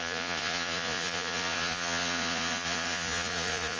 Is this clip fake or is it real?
fake